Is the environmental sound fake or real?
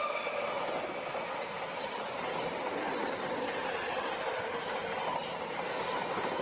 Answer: real